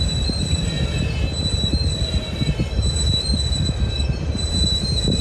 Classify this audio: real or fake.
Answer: fake